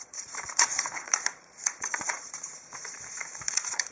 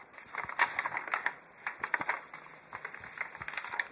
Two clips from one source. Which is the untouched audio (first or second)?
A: second